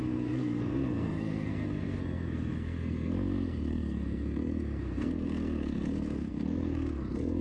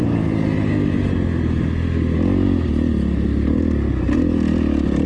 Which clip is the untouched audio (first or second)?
second